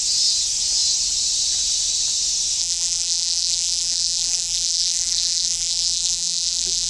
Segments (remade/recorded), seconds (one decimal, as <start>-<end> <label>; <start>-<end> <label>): 0.0-2.6 recorded; 2.6-6.9 remade